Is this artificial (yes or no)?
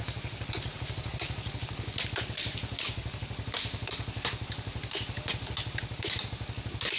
no